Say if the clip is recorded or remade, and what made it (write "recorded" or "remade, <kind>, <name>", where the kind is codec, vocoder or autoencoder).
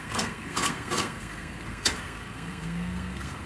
remade, codec, SNAC